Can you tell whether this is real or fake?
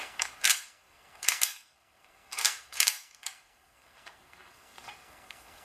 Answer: fake